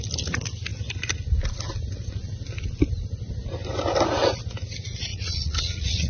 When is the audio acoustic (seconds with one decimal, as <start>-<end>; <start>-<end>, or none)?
0.0-5.1